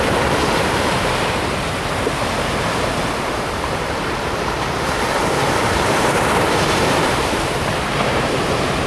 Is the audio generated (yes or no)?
yes